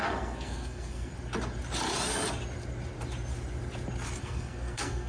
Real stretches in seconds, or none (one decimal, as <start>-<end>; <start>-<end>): 1.1-4.2